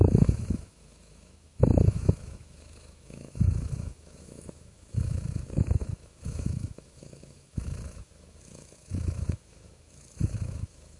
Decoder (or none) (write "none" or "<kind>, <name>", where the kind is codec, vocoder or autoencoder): autoencoder, DAC-VAE